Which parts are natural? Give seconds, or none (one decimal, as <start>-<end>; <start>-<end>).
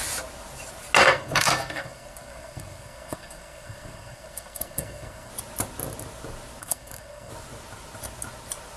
0.0-1.0; 5.3-6.6; 7.3-8.8